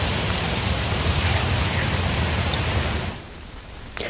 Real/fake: fake